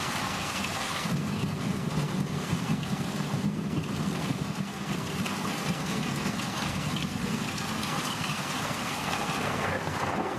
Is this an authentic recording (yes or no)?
no